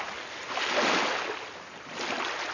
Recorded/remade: recorded